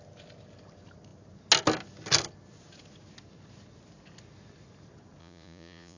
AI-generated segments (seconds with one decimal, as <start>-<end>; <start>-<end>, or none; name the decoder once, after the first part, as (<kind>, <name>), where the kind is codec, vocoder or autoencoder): 5.2-6.0 (vocoder, Vocos)